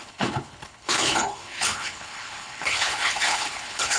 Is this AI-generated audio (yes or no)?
yes